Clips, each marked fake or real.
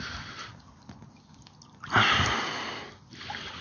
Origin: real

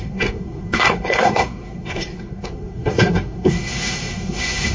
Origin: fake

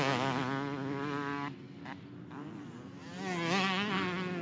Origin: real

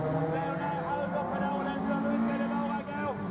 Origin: real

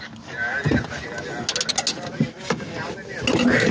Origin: real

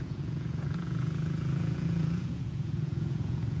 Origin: fake